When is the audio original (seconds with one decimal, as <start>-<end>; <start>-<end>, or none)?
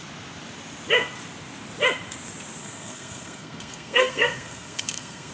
0.0-2.6